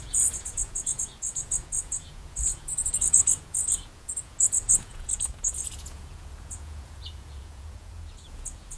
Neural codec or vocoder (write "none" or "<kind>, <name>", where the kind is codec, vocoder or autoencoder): vocoder, Vocos